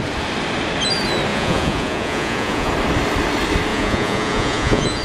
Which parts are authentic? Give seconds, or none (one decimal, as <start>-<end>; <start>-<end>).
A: 0.0-1.3; 2.7-3.7